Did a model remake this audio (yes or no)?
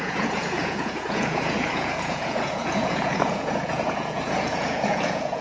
yes